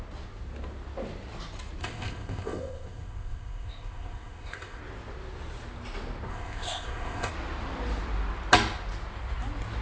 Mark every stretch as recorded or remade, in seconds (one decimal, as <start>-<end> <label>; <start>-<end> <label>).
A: 0.0-1.8 recorded; 1.8-4.8 remade; 4.8-6.3 recorded; 6.3-7.3 remade; 7.3-9.8 recorded

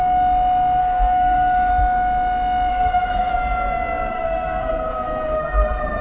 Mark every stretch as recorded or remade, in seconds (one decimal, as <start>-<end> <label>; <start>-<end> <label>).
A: 0.0-0.8 recorded; 0.8-1.7 remade; 1.7-2.7 recorded; 2.7-3.3 remade; 3.3-4.1 recorded; 4.1-6.0 remade

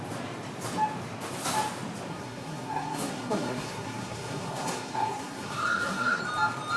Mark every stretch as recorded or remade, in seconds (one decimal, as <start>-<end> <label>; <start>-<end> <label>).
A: 0.0-2.1 recorded; 2.1-6.2 remade; 6.2-6.8 recorded

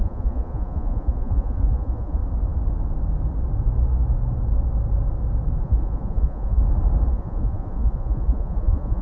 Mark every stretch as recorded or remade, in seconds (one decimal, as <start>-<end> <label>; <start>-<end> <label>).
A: 0.0-2.2 remade; 2.2-5.6 recorded; 5.6-6.6 remade; 6.6-7.1 recorded; 7.1-9.0 remade

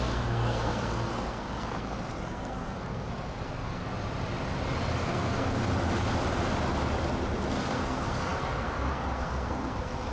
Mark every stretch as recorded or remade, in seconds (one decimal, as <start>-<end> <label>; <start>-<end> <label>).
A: 0.0-3.8 remade; 3.8-5.1 recorded; 5.1-5.6 remade; 5.6-7.5 recorded; 7.5-10.1 remade

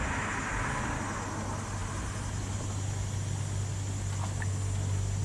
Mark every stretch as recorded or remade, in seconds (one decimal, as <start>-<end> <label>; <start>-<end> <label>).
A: 0.0-5.2 recorded

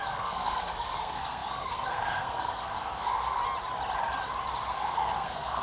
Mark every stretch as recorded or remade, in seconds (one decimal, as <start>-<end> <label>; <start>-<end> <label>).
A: 0.0-3.4 remade; 3.4-4.7 recorded; 4.7-5.6 remade